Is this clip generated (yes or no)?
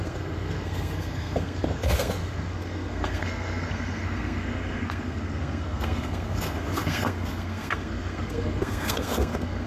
yes